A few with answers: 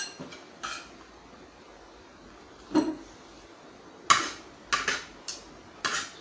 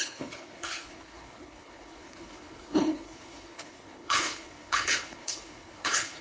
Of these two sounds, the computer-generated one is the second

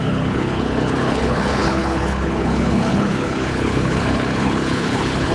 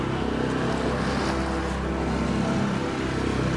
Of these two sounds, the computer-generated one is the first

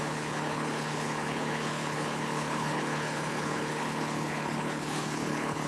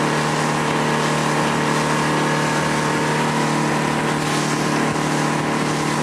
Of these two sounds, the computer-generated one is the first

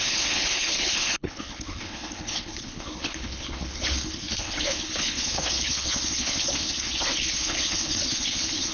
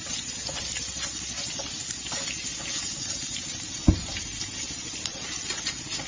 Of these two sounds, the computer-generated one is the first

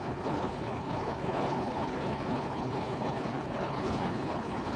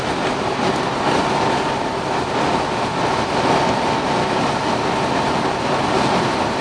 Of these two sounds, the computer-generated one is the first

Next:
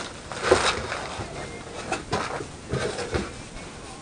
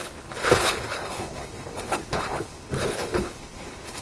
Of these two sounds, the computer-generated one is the second